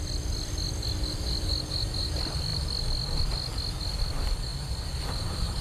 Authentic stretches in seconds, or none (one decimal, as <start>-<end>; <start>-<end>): 0.0-5.6